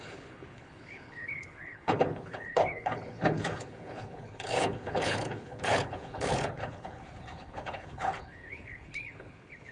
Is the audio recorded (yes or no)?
no